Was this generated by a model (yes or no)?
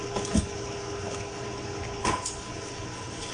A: yes